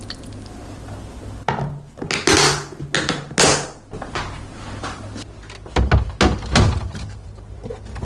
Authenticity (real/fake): real